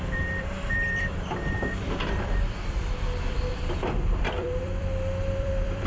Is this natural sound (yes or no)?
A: no